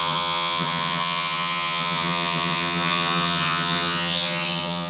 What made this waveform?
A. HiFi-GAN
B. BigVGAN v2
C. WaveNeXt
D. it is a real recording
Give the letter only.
A